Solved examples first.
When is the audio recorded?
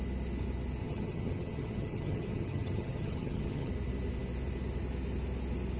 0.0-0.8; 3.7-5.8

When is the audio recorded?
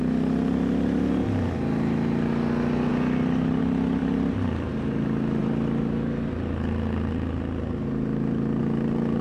0.0-4.0; 4.5-9.2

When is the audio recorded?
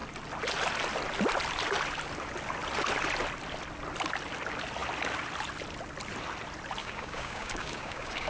0.0-6.8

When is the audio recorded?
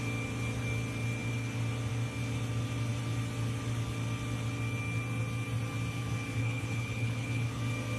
0.0-6.4; 7.6-8.0